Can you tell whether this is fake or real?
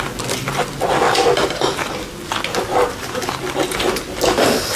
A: real